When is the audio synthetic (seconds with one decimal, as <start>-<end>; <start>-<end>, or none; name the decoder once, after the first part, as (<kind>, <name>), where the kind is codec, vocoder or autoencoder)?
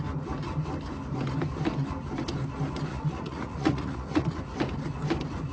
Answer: 2.9-4.4 (vocoder, Vocos)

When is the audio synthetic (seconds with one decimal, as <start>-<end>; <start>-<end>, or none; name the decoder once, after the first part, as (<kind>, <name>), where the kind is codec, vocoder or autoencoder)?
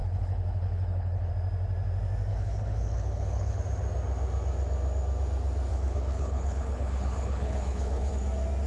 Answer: 0.0-1.3 (codec, HILCodec); 2.3-3.6; 5.7-8.1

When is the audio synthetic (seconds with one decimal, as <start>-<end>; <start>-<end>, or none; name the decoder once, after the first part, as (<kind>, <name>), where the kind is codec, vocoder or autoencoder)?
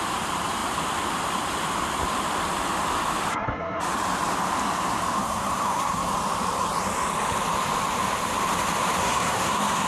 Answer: 3.3-3.8 (codec, SNAC); 5.2-6.1; 9.0-9.9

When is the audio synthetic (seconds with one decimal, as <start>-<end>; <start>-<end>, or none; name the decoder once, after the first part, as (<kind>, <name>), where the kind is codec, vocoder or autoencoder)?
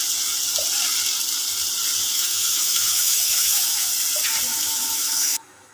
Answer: 2.0-3.9 (autoencoder, DAC-VAE); 4.5-5.7